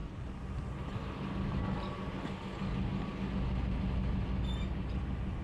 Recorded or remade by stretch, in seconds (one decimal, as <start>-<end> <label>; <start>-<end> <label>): 0.0-5.4 recorded